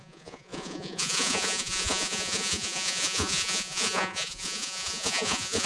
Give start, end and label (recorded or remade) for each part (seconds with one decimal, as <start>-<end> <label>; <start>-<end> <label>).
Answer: 0.0-5.7 remade